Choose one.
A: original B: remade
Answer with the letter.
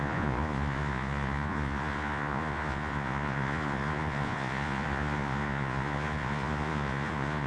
B